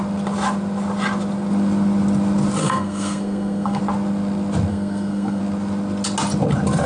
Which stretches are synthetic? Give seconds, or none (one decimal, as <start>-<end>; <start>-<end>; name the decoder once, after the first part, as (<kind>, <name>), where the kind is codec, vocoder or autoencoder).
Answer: 2.6-3.8 (codec, SNAC); 4.7-5.4